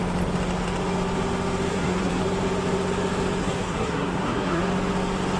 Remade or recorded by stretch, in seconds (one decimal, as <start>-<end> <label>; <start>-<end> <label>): 0.0-1.7 recorded; 1.7-2.2 remade; 2.2-3.4 recorded; 3.4-4.6 remade; 4.6-5.4 recorded